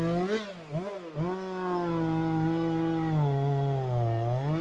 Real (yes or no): yes